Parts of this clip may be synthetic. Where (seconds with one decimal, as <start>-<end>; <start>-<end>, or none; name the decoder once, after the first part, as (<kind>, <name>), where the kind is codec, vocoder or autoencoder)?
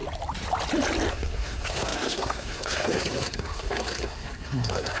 1.1-5.0 (codec, SNAC)